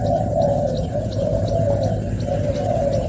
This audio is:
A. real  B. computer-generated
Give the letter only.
A